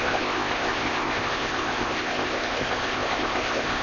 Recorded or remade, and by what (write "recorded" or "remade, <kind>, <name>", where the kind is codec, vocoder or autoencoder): remade, codec, ZipCodec